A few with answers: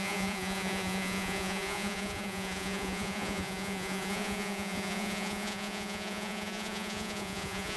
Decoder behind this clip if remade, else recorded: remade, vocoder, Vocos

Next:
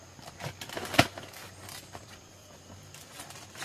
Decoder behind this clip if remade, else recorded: remade, vocoder, BigVGAN v2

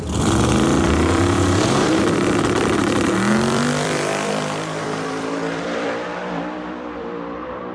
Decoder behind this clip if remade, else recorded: remade, vocoder, BigVGAN v2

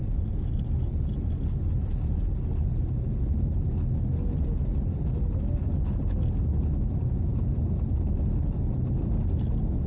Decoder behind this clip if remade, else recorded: recorded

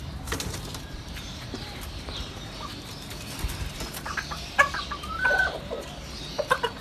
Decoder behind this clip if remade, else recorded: remade, vocoder, BigVGAN v2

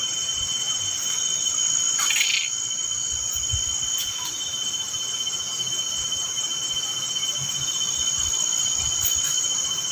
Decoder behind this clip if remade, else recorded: recorded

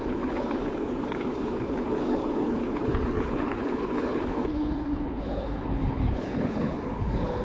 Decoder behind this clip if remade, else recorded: remade, codec, HILCodec